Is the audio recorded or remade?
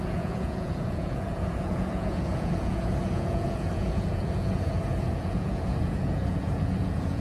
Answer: remade